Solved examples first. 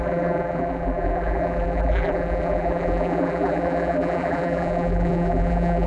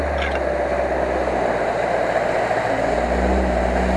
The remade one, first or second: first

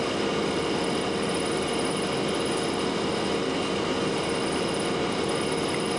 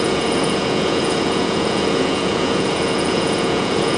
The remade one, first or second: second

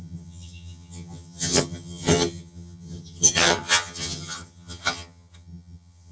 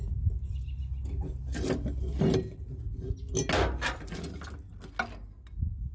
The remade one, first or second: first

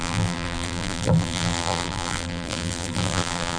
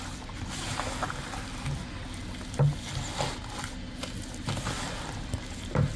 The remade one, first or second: first